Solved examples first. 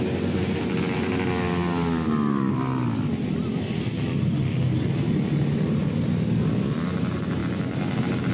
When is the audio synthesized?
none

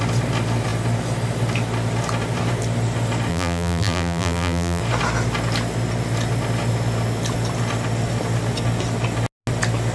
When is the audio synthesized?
3.3-4.8 (vocoder, BigVGAN v2)

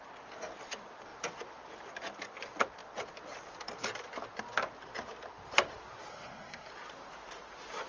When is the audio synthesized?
6.1-6.7 (codec, SNAC)